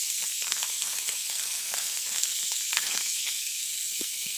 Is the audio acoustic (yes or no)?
no